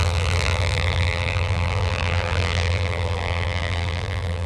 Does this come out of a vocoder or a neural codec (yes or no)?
yes